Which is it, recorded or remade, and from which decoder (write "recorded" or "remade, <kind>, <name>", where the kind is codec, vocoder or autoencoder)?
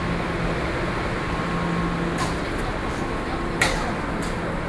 recorded